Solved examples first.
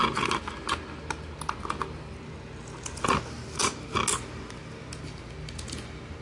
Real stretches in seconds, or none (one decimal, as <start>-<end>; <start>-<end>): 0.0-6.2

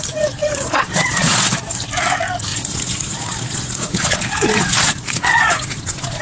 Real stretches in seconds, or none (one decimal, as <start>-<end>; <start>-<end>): 0.0-0.4; 1.5-2.5

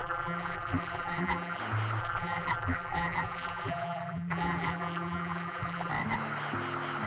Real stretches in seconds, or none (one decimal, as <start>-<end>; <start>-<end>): 1.6-2.0; 5.9-7.1